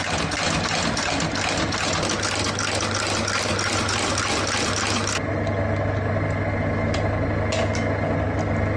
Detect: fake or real real